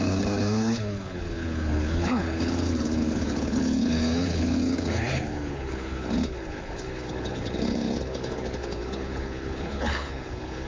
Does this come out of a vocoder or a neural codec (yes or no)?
yes